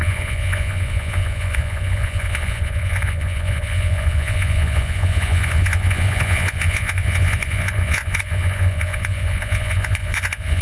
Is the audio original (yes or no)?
no